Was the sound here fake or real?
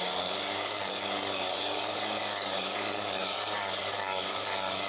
fake